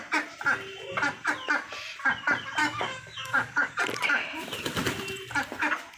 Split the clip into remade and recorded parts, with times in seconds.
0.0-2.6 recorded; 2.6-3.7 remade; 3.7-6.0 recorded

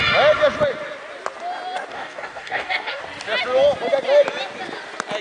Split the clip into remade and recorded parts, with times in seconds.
0.0-1.9 recorded; 1.9-3.0 remade; 3.0-5.2 recorded

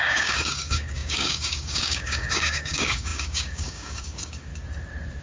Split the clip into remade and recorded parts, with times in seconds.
0.0-4.5 remade; 4.5-5.2 recorded

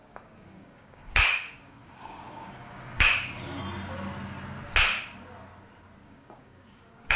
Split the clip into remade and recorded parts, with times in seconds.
0.0-3.6 remade; 3.6-6.0 recorded; 6.0-7.2 remade